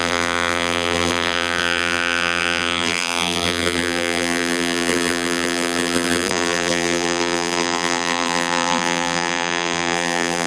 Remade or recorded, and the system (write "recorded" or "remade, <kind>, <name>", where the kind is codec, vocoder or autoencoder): remade, vocoder, BigVGAN v2